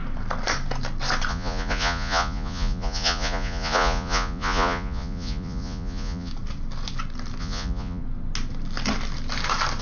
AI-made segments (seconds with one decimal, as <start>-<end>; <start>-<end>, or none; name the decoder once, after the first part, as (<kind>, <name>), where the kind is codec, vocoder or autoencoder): 1.3-6.3 (vocoder, Vocos); 7.4-8.0